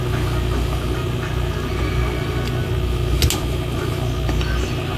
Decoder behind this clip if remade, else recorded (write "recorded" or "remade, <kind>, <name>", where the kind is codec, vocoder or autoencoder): recorded